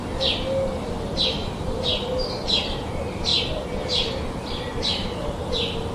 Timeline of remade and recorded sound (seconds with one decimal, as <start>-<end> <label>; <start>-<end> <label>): 0.0-1.4 recorded; 1.4-2.6 remade; 2.6-5.9 recorded